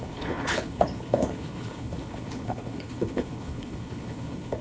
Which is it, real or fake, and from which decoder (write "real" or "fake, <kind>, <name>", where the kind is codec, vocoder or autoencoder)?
fake, codec, HILCodec